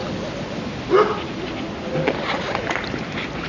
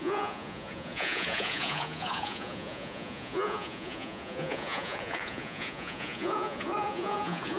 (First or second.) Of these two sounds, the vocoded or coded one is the second